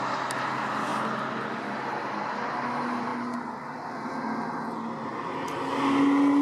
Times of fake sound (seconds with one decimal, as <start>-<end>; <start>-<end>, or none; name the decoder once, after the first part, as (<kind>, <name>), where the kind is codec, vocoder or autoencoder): none